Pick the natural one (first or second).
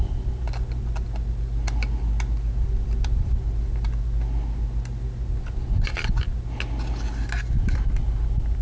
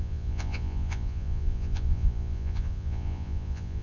first